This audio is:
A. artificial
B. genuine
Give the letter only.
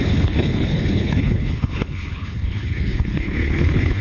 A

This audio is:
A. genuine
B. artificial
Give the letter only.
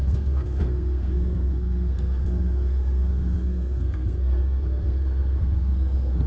B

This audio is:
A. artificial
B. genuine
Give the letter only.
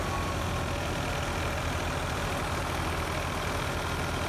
B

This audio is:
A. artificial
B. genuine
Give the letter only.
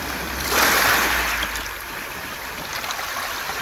A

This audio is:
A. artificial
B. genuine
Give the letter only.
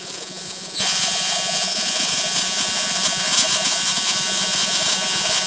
A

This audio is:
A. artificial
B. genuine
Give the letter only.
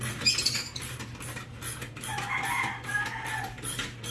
B